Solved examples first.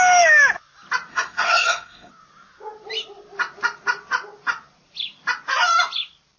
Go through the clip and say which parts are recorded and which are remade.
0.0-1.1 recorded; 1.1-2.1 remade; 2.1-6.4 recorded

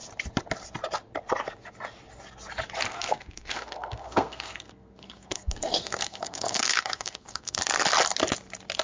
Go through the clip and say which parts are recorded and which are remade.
0.0-2.9 recorded; 2.9-7.6 remade; 7.6-8.8 recorded